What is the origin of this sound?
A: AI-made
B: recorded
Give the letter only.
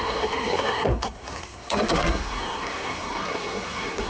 A